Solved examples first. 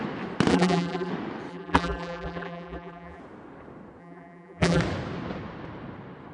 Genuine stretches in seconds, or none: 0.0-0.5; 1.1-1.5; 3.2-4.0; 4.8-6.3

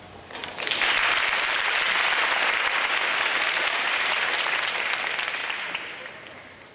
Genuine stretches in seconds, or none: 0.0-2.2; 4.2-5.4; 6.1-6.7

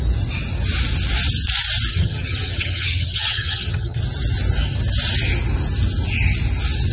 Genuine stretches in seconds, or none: 0.0-1.9; 4.0-6.9

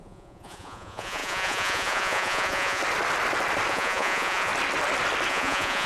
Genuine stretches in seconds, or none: 2.8-3.7; 4.5-5.3